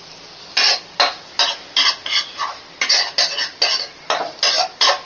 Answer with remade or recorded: recorded